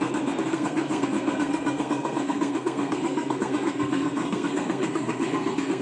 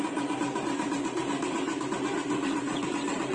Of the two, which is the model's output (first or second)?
first